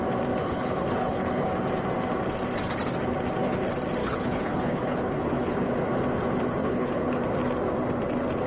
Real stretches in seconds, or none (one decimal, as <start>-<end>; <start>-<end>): 0.0-0.4; 1.5-4.0; 5.7-6.6; 7.2-8.5